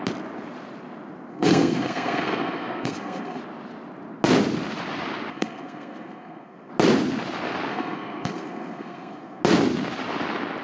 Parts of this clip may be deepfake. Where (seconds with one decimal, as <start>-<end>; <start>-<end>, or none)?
1.3-3.4; 5.3-6.7; 7.7-9.4